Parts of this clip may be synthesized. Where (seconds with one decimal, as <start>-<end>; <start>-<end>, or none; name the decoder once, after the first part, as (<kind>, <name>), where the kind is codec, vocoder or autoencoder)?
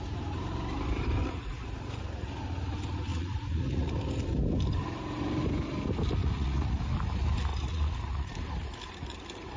1.2-2.0 (vocoder, Vocos); 3.1-3.9; 6.2-6.8; 7.5-8.3